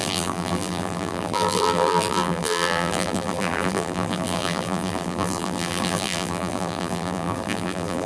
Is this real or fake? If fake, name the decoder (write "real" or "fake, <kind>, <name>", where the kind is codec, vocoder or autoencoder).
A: fake, vocoder, BigVGAN v2